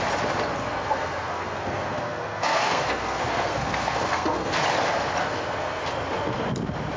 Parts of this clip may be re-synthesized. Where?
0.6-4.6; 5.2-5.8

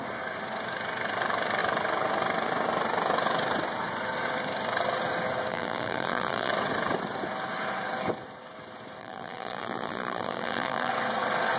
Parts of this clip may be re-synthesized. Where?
5.5-6.5; 9.0-10.9

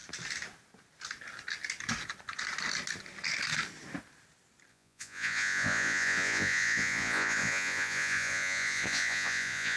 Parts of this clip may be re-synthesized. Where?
4.7-9.8

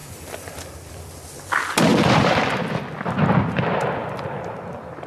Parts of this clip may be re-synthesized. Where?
1.9-2.8; 4.0-5.1